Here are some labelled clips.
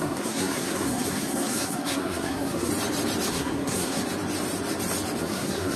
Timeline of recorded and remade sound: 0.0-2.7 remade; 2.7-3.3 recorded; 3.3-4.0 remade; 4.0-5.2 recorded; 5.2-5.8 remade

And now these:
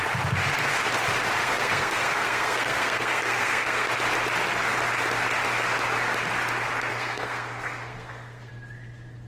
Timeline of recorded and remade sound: 0.0-1.4 recorded; 1.4-3.9 remade; 3.9-6.9 recorded; 6.9-8.5 remade; 8.5-9.3 recorded

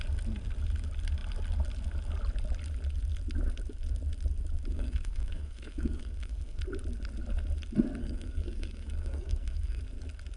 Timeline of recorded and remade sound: 0.0-4.7 recorded; 4.7-6.6 remade; 6.6-8.0 recorded; 8.0-9.8 remade; 9.8-10.4 recorded

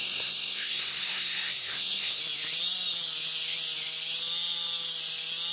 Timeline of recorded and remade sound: 0.0-2.2 remade; 2.2-5.5 recorded

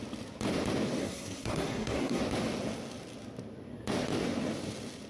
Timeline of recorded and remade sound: 0.0-1.0 recorded; 1.0-2.2 remade; 2.2-5.1 recorded

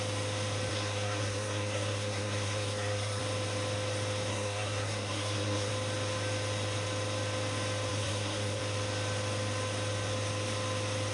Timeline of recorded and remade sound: 0.0-0.7 recorded; 0.7-3.2 remade; 3.2-4.3 recorded; 4.3-5.7 remade; 5.7-7.9 recorded; 7.9-8.6 remade; 8.6-11.1 recorded

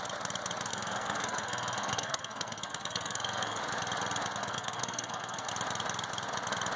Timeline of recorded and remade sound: 0.0-0.7 recorded; 0.7-3.6 remade; 3.6-4.4 recorded; 4.4-5.5 remade; 5.5-6.8 recorded